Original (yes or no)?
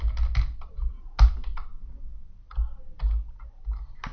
yes